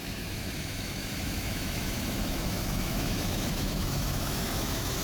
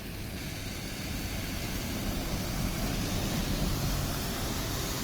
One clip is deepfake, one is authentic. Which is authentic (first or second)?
second